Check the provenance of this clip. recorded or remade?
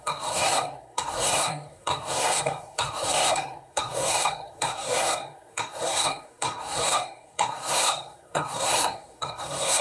remade